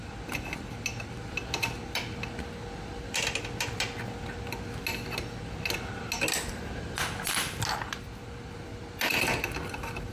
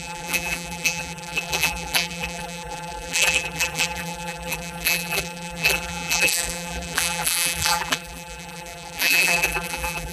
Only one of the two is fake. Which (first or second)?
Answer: second